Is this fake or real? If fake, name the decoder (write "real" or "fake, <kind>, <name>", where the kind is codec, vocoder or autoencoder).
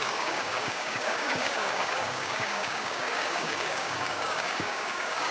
fake, codec, DAC